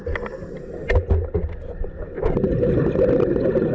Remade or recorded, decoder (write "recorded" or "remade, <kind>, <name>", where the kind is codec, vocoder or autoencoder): recorded